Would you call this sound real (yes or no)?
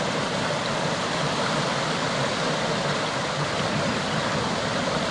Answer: no